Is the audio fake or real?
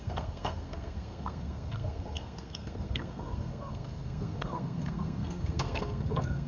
fake